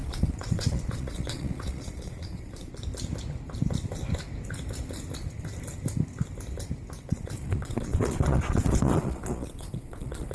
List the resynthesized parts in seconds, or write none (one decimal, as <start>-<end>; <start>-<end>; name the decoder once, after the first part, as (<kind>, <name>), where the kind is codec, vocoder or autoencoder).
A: 0.0-2.7 (vocoder, Vocos); 7.1-10.3